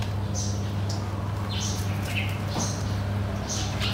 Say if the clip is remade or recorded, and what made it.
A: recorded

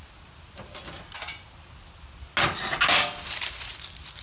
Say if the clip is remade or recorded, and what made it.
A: recorded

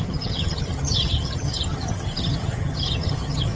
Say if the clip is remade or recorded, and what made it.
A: remade, vocoder, HiFi-GAN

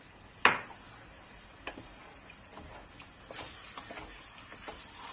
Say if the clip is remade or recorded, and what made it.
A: recorded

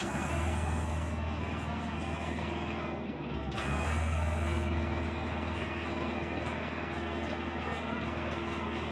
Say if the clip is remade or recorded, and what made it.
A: remade, codec, SNAC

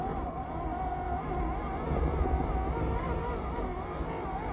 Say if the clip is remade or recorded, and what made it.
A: recorded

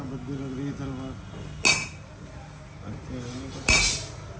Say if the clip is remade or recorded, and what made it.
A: recorded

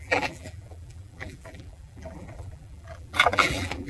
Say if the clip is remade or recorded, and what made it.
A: remade, vocoder, BigVGAN v2